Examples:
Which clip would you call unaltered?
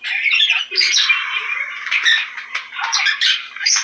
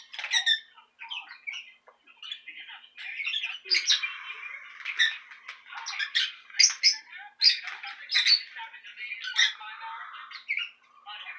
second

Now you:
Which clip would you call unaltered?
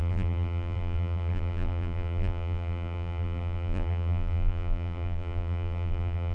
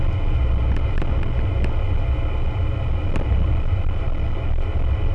second